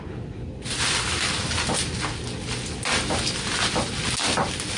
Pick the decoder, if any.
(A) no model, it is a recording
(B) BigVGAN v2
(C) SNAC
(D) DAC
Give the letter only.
A